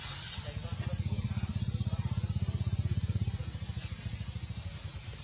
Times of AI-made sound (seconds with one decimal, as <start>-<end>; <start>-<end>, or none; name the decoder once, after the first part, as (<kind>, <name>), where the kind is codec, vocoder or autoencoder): none